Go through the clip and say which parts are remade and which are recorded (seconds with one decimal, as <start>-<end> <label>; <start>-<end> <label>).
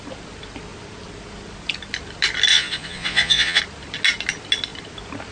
0.0-2.5 recorded; 2.5-3.6 remade; 3.6-5.3 recorded